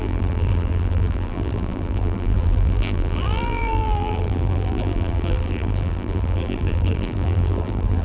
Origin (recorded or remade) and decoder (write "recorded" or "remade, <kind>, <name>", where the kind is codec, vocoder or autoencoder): remade, vocoder, BigVGAN v2